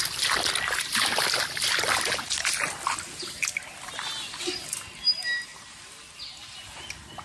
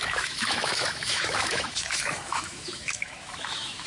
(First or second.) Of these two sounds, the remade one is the second